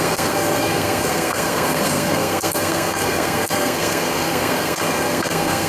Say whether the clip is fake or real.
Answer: fake